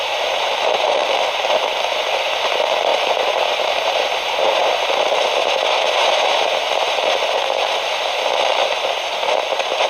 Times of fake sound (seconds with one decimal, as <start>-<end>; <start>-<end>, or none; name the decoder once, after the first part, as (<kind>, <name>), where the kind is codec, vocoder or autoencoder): 0.0-1.0 (vocoder, BigVGAN v2); 1.8-9.9